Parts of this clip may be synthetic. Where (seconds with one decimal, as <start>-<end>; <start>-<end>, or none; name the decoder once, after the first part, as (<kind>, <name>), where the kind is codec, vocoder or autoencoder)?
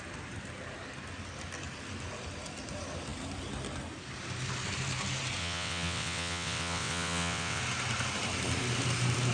5.4-7.6 (vocoder, WaveNeXt)